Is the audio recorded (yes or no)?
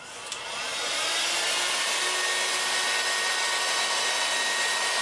yes